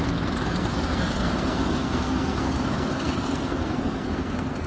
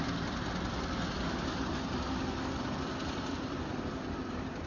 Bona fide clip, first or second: second